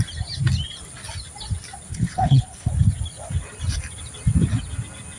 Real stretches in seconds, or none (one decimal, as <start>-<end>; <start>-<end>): 0.0-1.9; 2.7-5.2